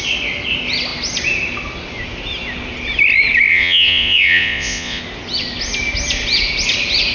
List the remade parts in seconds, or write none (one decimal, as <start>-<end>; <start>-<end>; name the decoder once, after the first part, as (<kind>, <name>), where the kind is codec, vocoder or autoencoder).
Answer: 3.5-5.0 (vocoder, Vocos)